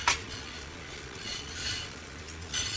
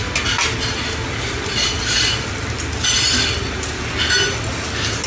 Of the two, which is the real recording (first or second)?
second